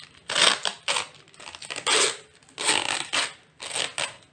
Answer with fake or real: real